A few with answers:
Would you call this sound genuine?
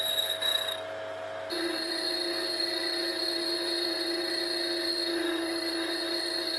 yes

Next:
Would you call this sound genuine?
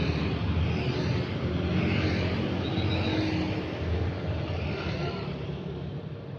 yes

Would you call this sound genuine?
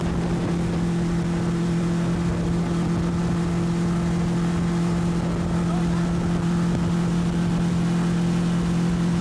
yes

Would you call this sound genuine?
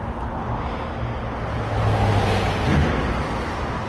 yes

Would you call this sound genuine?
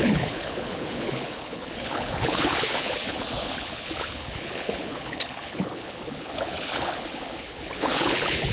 no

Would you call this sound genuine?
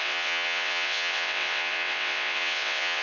no